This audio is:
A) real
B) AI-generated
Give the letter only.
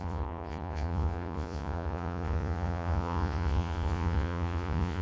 B